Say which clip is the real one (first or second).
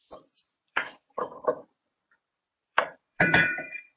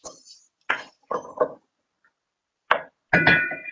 second